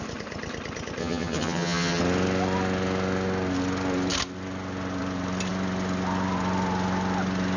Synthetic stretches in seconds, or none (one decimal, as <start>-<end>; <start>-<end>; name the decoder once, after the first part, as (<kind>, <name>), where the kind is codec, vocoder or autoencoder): 1.0-2.0 (vocoder, HiFi-GAN)